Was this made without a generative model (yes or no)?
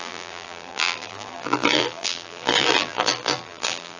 no